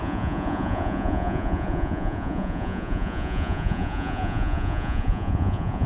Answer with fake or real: fake